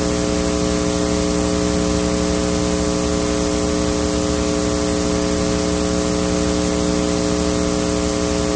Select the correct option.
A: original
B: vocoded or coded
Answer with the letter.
A